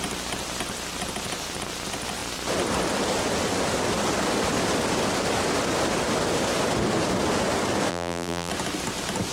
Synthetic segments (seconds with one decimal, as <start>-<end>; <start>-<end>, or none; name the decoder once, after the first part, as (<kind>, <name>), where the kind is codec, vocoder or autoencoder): 7.9-8.5 (vocoder, BigVGAN v2)